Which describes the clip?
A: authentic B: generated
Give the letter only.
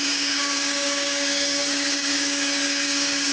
B